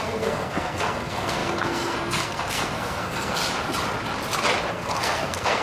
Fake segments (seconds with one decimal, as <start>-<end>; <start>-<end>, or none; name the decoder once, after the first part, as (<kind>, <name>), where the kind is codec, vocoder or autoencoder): 0.0-3.4 (codec, SNAC); 4.7-5.6